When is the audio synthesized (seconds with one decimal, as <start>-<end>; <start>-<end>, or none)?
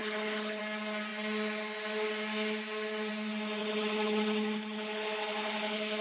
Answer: 0.0-0.6; 3.6-6.0